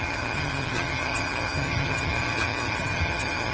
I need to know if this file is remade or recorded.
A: remade